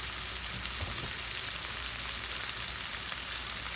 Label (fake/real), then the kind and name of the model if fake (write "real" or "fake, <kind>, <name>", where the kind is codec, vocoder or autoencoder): real